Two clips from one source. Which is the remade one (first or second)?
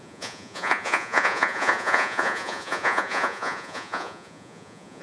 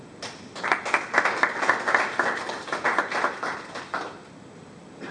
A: first